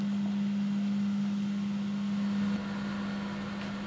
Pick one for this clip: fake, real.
real